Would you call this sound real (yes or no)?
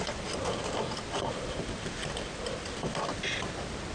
yes